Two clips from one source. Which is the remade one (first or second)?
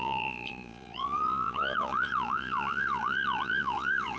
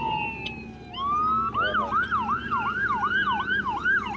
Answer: first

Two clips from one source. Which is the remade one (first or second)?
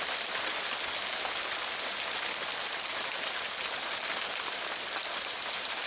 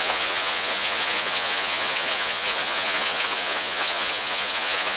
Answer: second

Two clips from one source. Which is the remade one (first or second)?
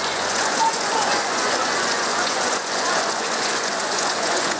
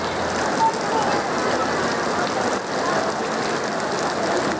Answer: first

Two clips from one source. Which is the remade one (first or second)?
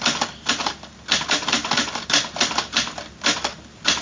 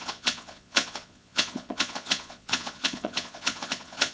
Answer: second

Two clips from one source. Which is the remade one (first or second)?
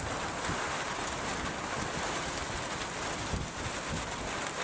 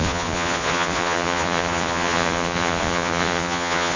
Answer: second